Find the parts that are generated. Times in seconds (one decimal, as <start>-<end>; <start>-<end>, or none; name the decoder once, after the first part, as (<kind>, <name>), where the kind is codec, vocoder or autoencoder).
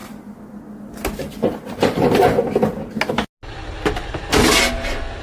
none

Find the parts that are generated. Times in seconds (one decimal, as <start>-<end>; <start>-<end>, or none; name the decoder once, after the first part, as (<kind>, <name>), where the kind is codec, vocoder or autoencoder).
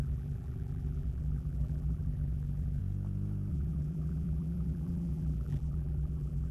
0.0-2.8 (vocoder, BigVGAN v2); 3.5-6.5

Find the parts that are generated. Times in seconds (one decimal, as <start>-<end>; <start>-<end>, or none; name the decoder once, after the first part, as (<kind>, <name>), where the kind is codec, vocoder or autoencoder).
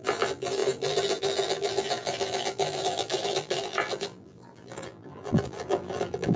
0.0-6.4 (vocoder, BigVGAN v2)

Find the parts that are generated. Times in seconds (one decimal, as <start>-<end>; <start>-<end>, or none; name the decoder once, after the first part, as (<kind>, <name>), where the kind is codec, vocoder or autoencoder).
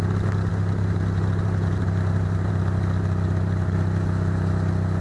0.5-2.5 (vocoder, BigVGAN v2)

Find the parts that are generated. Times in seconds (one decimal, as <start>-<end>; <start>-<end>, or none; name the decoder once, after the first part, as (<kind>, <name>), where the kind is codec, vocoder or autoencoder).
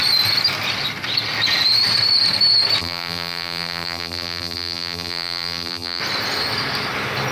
2.8-6.0 (vocoder, BigVGAN v2)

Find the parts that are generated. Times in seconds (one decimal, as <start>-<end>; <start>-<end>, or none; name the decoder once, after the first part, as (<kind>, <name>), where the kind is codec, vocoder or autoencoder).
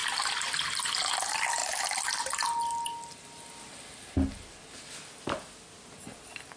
none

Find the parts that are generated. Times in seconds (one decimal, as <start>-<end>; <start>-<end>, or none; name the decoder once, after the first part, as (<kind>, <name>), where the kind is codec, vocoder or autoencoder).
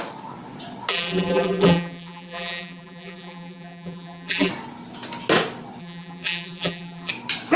0.9-4.5 (vocoder, BigVGAN v2); 5.8-7.1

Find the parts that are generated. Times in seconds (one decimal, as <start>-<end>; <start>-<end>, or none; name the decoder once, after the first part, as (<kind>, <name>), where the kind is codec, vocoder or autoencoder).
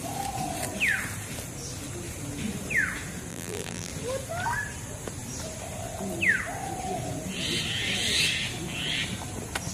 3.3-3.9 (vocoder, BigVGAN v2)